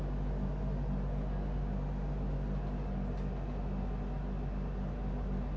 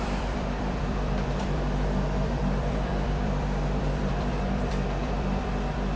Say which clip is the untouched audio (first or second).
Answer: first